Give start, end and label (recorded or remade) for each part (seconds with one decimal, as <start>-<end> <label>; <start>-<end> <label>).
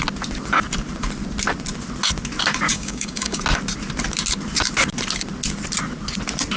0.0-2.7 recorded; 2.7-3.4 remade; 3.4-6.6 recorded